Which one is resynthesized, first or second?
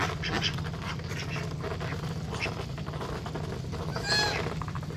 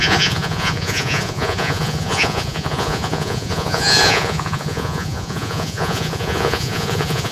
second